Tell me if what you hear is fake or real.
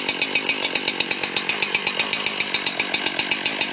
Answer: real